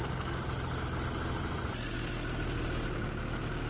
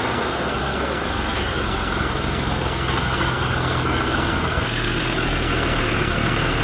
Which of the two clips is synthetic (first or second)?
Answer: second